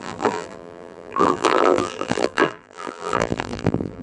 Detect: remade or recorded remade